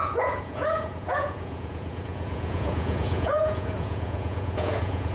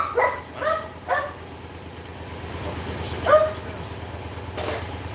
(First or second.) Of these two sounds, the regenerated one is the first